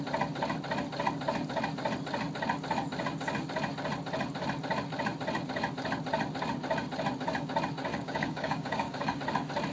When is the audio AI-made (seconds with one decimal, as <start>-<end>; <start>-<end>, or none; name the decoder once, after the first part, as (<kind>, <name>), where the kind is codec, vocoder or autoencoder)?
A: 7.9-9.2 (codec, DAC)

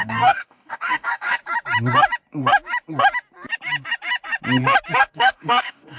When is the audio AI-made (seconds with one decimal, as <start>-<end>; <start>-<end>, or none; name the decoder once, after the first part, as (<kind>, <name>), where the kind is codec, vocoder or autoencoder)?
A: 0.0-1.4 (codec, DAC); 5.0-6.0